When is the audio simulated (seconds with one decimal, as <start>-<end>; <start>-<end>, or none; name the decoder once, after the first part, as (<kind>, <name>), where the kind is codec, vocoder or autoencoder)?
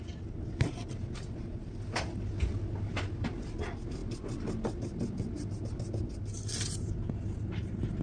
none